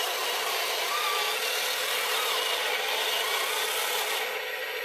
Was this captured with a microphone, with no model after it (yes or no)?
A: yes